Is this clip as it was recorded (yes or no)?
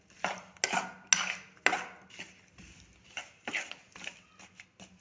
yes